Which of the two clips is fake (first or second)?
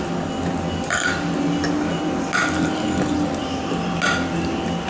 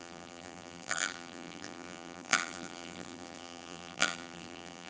second